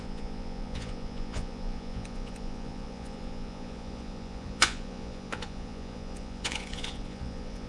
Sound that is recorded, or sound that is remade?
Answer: remade